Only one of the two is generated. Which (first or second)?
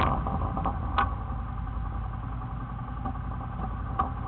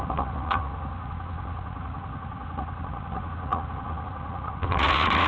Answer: second